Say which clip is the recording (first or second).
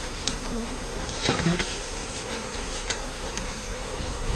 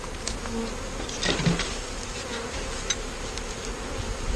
second